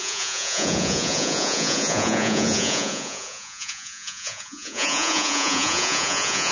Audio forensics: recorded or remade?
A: remade